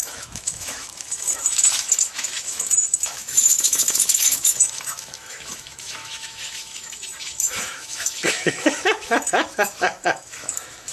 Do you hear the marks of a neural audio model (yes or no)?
yes